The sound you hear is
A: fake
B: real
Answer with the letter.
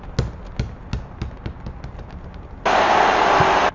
B